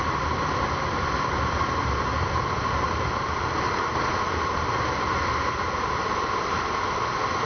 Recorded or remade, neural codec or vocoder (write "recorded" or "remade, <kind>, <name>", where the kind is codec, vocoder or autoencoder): recorded